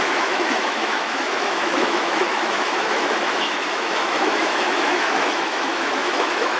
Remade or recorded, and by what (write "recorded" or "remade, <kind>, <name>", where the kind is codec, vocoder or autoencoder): remade, autoencoder, DAC-VAE